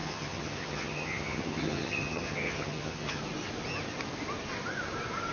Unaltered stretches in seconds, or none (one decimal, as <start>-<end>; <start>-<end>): 3.2-5.3